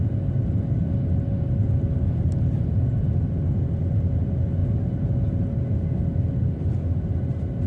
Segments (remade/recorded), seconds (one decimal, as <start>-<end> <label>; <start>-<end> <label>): 0.0-4.6 recorded; 4.6-5.1 remade; 5.1-7.7 recorded